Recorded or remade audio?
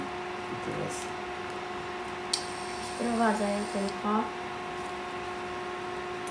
recorded